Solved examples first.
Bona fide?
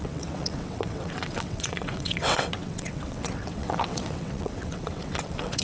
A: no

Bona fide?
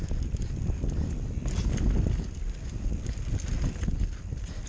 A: yes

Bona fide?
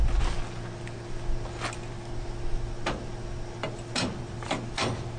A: yes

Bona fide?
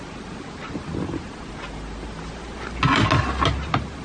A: yes